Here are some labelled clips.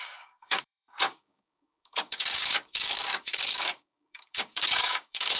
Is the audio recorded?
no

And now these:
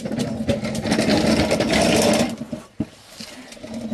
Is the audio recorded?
yes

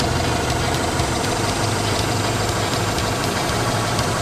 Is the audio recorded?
no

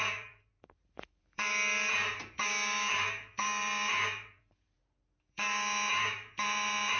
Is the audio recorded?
no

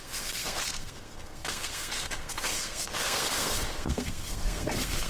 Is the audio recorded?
no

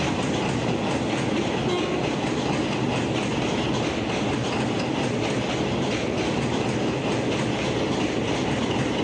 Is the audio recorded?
yes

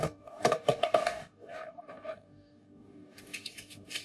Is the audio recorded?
no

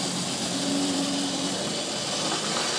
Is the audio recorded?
yes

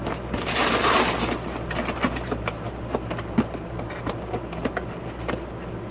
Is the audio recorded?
yes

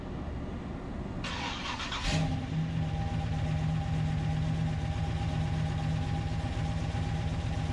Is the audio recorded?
yes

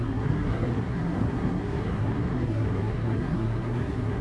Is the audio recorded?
no